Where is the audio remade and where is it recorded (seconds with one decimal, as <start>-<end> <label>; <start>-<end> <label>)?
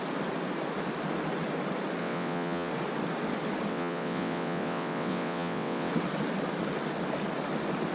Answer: 0.0-2.0 recorded; 2.0-2.7 remade; 2.7-3.7 recorded; 3.7-5.9 remade; 5.9-7.9 recorded